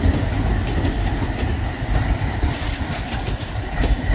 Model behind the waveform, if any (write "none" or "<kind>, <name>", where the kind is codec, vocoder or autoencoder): none